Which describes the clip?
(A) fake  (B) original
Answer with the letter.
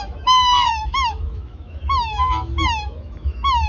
A